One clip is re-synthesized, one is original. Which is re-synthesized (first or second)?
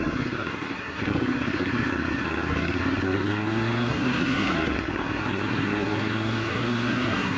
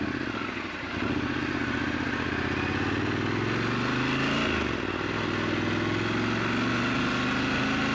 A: first